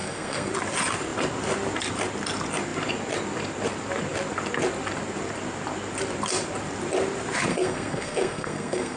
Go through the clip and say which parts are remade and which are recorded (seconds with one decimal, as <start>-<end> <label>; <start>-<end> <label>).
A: 0.0-0.5 remade; 0.5-7.5 recorded; 7.5-9.0 remade